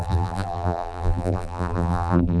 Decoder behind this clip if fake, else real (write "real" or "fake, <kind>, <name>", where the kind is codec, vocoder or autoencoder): fake, vocoder, BigVGAN v2